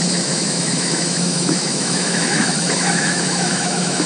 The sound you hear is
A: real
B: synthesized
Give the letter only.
B